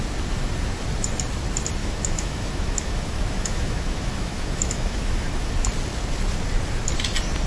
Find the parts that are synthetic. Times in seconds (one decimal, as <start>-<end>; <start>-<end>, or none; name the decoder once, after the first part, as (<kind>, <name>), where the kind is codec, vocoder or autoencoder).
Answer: 1.8-5.5 (autoencoder, DAC-VAE)